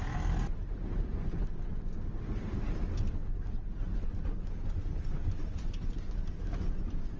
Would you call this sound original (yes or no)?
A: yes